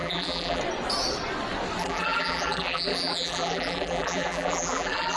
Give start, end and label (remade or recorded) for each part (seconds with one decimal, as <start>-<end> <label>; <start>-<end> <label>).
0.0-0.6 remade; 0.6-1.8 recorded; 1.8-5.2 remade